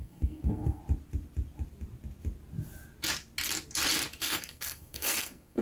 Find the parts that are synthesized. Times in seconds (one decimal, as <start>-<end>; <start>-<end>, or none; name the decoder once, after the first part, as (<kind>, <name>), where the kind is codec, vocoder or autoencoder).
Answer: 0.0-0.8 (codec, SNAC); 4.2-5.6